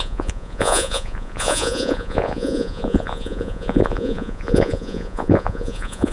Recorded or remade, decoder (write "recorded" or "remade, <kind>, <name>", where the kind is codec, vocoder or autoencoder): remade, vocoder, Vocos